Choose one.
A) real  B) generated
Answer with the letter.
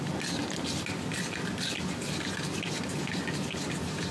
A